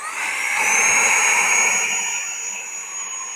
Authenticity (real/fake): real